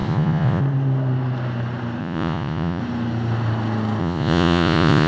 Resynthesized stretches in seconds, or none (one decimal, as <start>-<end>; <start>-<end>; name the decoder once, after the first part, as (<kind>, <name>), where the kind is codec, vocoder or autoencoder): 0.0-0.6 (vocoder, Vocos); 2.0-2.8; 4.0-5.1